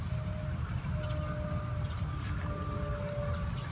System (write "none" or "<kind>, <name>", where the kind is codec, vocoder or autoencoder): none